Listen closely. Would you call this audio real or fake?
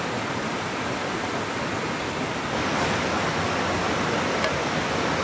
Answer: real